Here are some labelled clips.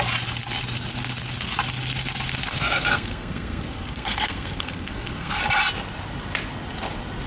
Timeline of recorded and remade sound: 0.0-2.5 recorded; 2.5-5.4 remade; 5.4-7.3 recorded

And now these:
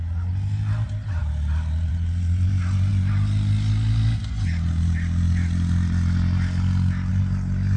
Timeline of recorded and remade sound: 0.0-7.8 recorded

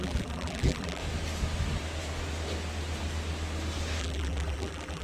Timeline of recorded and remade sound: 0.0-1.0 remade; 1.0-4.0 recorded; 4.0-5.0 remade

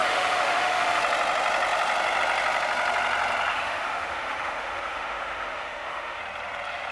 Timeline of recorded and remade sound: 0.0-1.0 remade; 1.0-3.5 recorded; 3.5-6.2 remade; 6.2-6.9 recorded

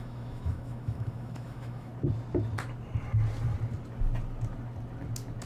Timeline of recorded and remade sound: 0.0-1.9 remade; 1.9-5.5 recorded

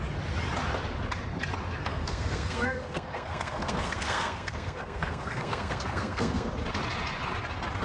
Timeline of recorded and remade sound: 0.0-1.8 recorded; 1.8-6.5 remade; 6.5-7.8 recorded